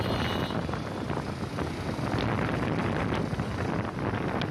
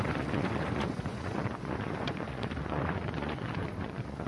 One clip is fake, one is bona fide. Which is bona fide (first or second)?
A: first